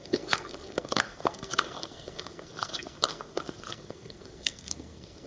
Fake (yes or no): yes